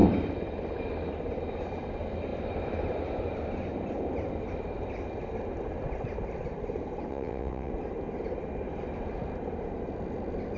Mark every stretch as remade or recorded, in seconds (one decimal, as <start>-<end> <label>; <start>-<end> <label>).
0.0-7.1 recorded; 7.1-7.7 remade; 7.7-10.6 recorded

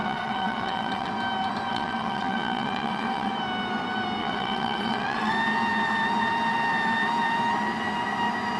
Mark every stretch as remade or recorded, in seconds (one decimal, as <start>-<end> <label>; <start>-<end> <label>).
0.0-1.1 remade; 1.1-1.7 recorded; 1.7-3.3 remade; 3.3-4.2 recorded; 4.2-5.3 remade; 5.3-8.6 recorded